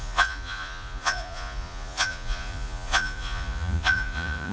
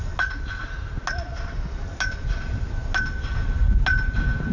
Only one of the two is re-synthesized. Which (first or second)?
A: first